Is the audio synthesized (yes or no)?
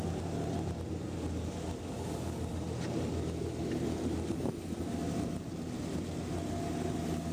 no